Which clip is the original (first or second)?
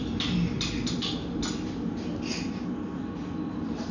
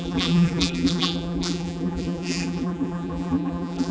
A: first